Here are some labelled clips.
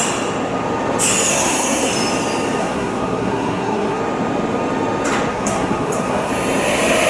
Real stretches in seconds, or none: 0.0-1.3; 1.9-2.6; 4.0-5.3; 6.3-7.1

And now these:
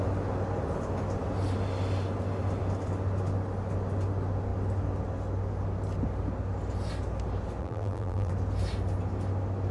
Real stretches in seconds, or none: 0.0-7.6; 8.3-9.7

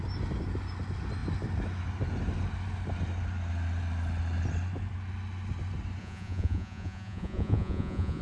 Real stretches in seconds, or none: 0.0-6.0

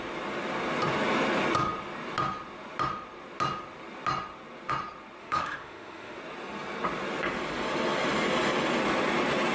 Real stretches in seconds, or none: 0.0-5.2; 6.2-9.5